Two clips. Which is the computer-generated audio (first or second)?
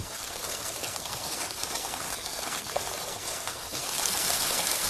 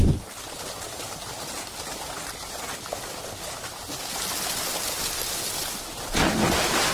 first